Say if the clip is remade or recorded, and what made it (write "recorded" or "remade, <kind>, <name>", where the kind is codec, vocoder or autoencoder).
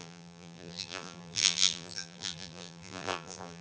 remade, vocoder, BigVGAN v2